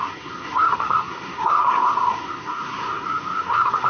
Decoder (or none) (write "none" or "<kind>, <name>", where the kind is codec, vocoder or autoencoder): codec, SNAC